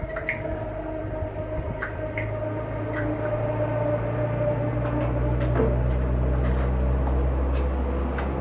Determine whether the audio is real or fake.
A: real